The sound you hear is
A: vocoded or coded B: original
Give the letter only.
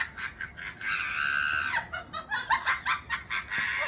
B